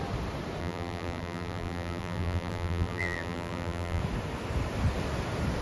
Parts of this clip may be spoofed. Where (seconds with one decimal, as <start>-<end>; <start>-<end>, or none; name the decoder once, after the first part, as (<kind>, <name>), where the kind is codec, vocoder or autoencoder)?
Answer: 0.6-4.0 (vocoder, BigVGAN v2)